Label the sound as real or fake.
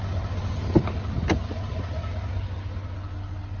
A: real